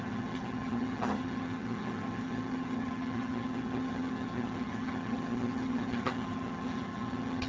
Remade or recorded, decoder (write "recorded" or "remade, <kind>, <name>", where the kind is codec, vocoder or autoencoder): remade, vocoder, HiFi-GAN